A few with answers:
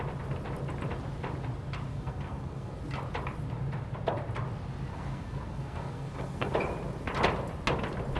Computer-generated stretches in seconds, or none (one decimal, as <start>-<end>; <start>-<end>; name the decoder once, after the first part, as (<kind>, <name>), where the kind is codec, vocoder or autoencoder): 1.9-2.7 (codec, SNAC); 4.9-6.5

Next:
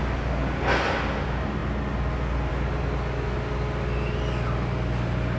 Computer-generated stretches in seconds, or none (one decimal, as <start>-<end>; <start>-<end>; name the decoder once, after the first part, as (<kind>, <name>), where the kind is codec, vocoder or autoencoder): none

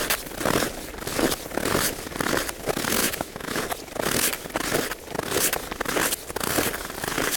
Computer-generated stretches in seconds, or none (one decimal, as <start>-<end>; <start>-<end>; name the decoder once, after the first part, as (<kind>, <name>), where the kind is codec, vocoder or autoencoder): 3.0-3.6 (autoencoder, DAC-VAE)

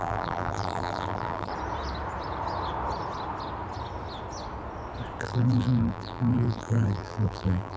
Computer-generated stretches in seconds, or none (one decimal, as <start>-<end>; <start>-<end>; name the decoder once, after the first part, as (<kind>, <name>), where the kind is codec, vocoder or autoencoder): 0.0-1.5 (vocoder, BigVGAN v2); 5.2-7.8

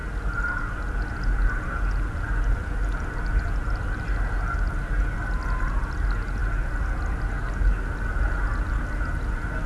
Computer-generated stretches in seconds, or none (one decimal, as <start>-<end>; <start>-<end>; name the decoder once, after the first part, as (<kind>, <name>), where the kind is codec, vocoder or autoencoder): none